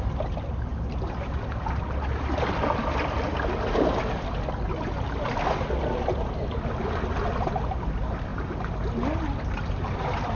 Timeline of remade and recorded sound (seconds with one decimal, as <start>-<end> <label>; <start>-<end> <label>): 0.0-10.4 recorded